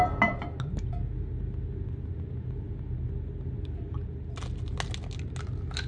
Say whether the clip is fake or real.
real